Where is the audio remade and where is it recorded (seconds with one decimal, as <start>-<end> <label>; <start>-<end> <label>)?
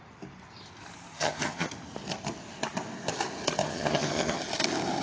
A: 0.0-1.1 recorded; 1.1-1.7 remade; 1.7-3.6 recorded; 3.6-4.4 remade; 4.4-5.0 recorded